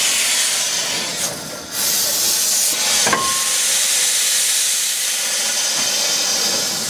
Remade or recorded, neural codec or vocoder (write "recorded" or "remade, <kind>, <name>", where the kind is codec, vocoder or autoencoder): recorded